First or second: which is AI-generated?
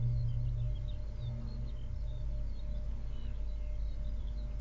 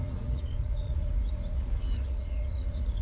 second